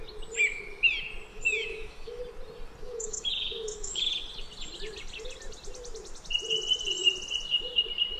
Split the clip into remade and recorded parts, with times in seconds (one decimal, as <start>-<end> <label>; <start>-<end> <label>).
0.0-1.3 recorded; 1.3-2.2 remade; 2.2-2.8 recorded; 2.8-4.1 remade; 4.1-8.2 recorded